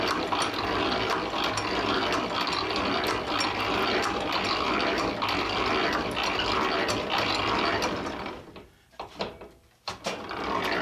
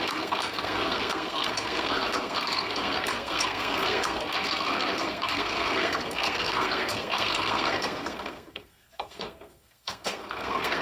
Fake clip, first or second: second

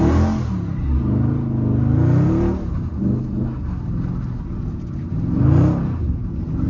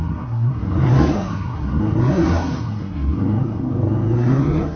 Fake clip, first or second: second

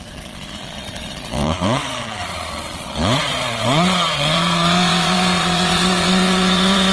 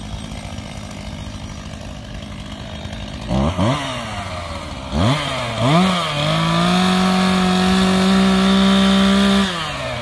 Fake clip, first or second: first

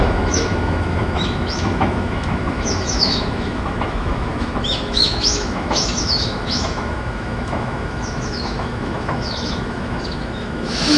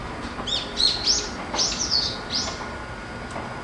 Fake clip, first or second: first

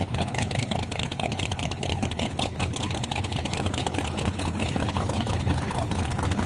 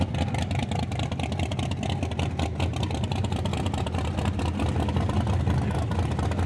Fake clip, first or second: first